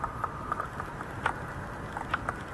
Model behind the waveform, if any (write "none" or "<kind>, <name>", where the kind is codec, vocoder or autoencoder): vocoder, BigVGAN v2